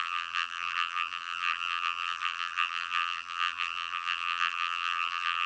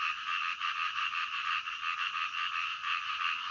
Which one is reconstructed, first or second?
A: first